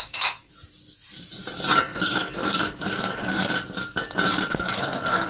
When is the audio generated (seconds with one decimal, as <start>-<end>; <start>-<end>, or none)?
0.0-0.5; 1.8-3.5; 4.5-5.3